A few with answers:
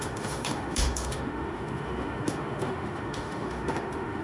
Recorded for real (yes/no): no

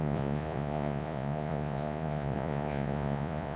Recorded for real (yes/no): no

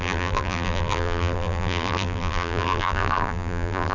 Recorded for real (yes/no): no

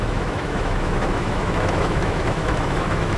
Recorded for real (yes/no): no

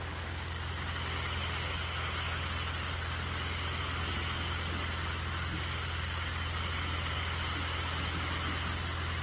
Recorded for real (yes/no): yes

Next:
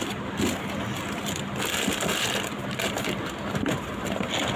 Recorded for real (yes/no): yes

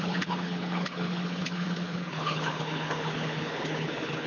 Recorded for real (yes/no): no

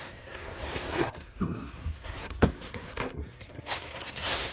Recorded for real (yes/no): no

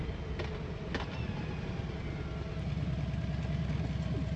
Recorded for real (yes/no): yes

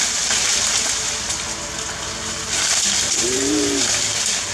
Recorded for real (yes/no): yes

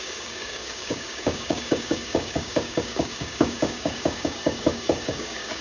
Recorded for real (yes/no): no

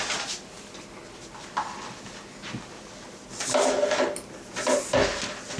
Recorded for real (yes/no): yes